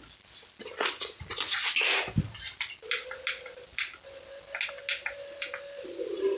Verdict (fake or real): real